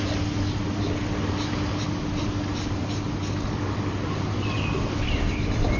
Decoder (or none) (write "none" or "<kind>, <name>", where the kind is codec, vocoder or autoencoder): none